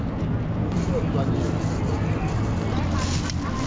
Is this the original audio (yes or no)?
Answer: yes